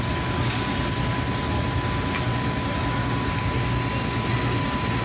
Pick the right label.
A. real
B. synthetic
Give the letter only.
A